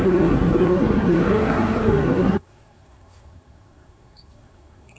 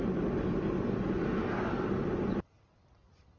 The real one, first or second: second